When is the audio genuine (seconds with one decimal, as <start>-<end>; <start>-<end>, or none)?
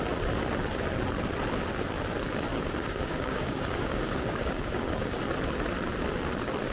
0.0-2.5; 5.2-6.7